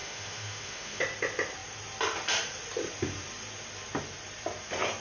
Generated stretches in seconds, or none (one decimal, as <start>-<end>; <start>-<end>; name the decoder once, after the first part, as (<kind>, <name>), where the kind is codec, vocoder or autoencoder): 0.0-1.0 (autoencoder, DAC-VAE)